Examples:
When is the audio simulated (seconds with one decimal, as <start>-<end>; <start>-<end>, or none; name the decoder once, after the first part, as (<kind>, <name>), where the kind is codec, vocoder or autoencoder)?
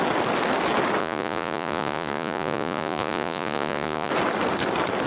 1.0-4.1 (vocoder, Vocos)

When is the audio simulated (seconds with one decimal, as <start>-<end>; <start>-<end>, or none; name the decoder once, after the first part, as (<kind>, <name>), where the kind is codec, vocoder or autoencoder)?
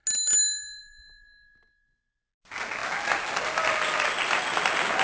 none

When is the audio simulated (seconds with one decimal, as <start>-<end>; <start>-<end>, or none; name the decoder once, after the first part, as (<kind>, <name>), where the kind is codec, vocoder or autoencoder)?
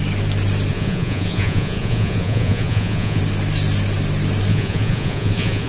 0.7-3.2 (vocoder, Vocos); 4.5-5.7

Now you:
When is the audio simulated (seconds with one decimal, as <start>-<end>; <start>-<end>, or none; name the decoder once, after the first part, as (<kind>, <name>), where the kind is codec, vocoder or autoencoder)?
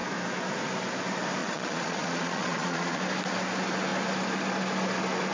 1.4-3.0 (vocoder, Vocos)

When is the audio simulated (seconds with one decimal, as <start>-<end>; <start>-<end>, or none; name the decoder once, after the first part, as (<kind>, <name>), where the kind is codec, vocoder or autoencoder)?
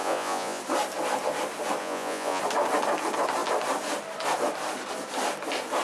0.0-0.6 (vocoder, Vocos); 1.8-2.4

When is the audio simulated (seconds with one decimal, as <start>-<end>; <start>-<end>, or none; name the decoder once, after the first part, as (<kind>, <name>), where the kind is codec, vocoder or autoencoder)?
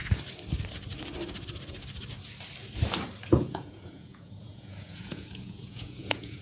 3.3-6.4 (vocoder, Vocos)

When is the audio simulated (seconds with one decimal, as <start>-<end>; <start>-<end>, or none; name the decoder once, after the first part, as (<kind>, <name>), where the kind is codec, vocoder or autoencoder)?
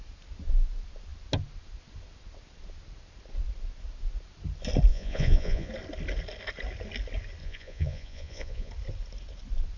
4.9-5.7 (vocoder, Vocos); 7.4-8.7